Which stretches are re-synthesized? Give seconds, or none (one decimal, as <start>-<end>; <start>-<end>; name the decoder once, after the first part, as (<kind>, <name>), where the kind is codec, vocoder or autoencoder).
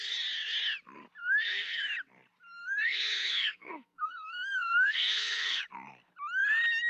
1.2-1.8 (codec, SNAC); 2.6-5.6